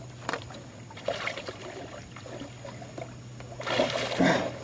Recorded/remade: recorded